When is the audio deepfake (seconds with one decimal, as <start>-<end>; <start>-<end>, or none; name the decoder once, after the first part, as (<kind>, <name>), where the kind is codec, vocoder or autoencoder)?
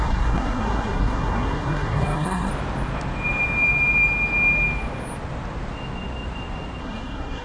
0.0-2.5 (codec, SNAC); 6.8-7.4